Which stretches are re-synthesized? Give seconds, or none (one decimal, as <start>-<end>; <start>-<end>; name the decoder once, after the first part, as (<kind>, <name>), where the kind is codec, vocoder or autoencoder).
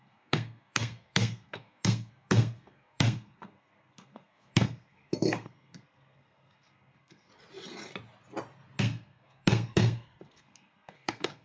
0.0-7.3 (codec, SNAC); 8.8-11.4